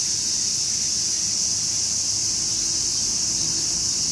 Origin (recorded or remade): recorded